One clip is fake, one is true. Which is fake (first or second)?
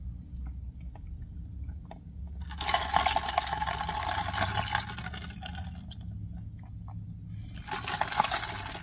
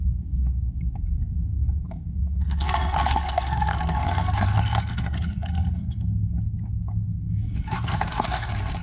second